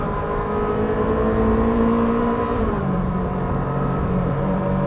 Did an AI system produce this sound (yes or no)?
yes